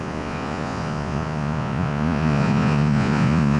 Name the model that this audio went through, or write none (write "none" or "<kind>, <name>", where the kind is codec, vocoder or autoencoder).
vocoder, Vocos